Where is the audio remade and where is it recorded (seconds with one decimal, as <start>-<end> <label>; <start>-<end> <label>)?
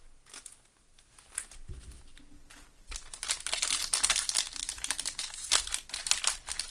0.0-4.6 recorded; 4.6-5.2 remade; 5.2-6.7 recorded